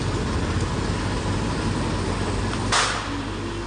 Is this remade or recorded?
recorded